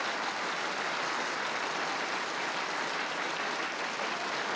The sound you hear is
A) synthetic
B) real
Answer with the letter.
A